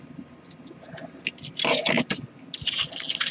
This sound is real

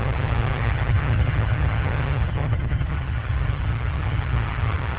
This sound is fake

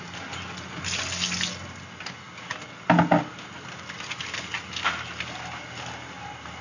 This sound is real